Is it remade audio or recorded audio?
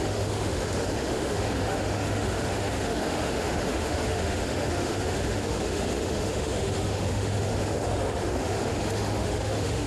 remade